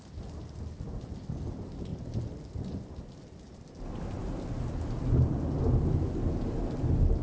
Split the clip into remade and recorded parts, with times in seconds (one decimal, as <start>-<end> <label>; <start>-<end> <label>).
0.0-7.2 recorded